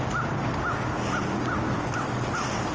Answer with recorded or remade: recorded